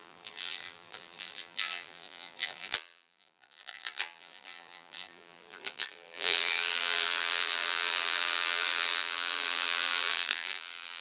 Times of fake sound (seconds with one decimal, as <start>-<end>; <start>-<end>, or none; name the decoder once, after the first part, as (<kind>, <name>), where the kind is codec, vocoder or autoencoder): 0.0-11.0 (vocoder, BigVGAN v2)